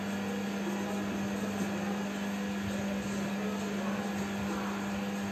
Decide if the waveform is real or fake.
real